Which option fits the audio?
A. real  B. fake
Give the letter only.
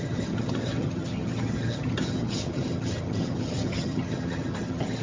B